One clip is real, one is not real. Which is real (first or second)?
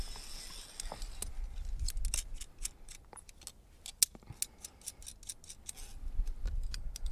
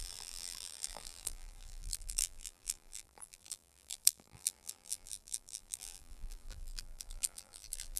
first